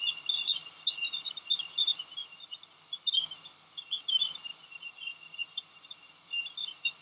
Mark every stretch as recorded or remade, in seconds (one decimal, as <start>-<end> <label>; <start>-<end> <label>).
0.0-7.0 recorded

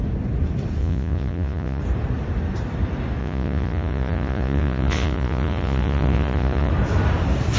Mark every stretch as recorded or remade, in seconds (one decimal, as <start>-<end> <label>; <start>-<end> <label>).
0.0-0.8 recorded; 0.8-1.8 remade; 1.8-3.2 recorded; 3.2-6.7 remade; 6.7-7.6 recorded

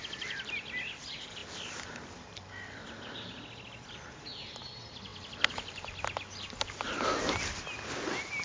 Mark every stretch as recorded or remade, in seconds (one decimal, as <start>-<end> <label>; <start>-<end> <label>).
0.0-8.4 recorded

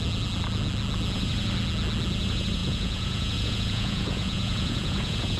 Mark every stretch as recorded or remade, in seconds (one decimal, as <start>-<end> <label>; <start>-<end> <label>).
0.0-2.6 recorded; 2.6-5.4 remade

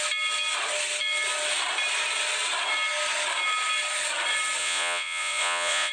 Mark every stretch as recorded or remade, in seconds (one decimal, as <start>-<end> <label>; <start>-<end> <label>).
0.0-4.6 recorded; 4.6-5.9 remade

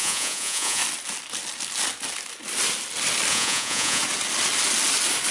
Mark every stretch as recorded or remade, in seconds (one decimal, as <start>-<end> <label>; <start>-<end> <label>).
0.0-0.8 remade; 0.8-3.3 recorded; 3.3-4.0 remade; 4.0-5.3 recorded

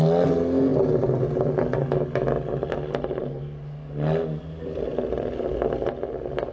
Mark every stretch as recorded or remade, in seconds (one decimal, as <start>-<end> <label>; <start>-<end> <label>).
0.0-6.5 recorded

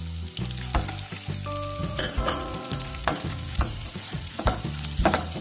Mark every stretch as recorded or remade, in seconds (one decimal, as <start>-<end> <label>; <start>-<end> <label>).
0.0-1.8 recorded; 1.8-4.4 remade; 4.4-5.4 recorded